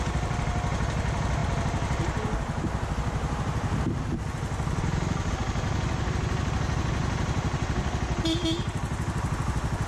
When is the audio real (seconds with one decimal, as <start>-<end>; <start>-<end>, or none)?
0.0-9.9